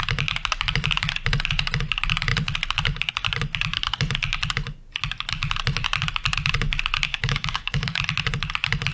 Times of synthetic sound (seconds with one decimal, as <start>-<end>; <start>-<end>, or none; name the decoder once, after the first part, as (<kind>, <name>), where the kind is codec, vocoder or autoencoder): 7.1-8.0 (autoencoder, DAC-VAE)